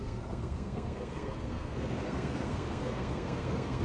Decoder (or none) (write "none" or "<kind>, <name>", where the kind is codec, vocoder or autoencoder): codec, SNAC